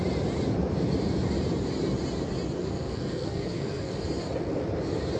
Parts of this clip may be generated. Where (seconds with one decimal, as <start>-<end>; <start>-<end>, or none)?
2.6-3.9